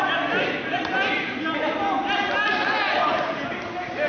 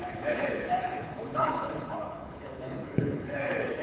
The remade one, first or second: second